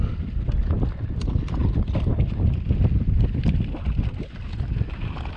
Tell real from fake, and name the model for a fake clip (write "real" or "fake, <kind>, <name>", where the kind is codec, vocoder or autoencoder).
real